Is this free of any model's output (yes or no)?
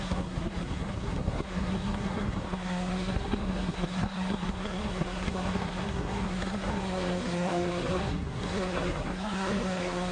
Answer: no